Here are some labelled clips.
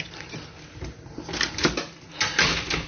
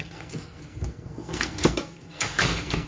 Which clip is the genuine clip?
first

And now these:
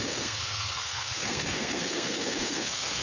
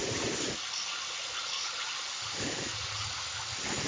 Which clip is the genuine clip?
second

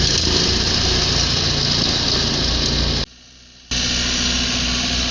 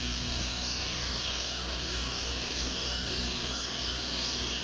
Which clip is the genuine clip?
first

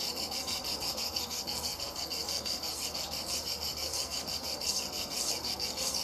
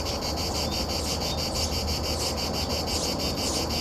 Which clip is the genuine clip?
second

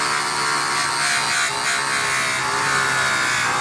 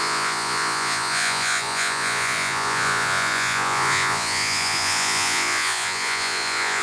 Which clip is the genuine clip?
first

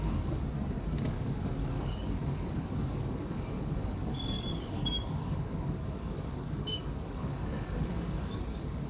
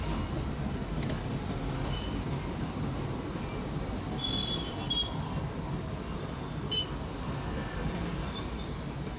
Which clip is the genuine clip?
second